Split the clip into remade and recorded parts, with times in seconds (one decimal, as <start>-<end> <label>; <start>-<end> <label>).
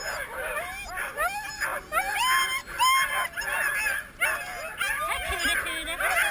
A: 0.0-6.3 recorded